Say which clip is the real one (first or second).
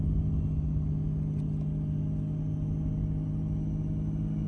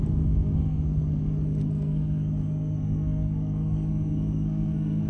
first